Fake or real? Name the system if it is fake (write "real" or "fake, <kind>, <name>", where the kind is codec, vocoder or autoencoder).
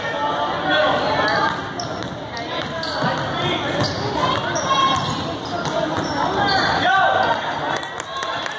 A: real